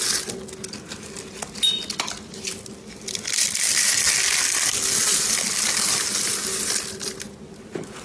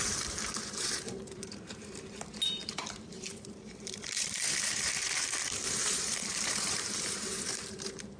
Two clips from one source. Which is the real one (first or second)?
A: first